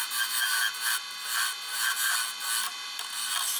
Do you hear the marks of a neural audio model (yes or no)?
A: no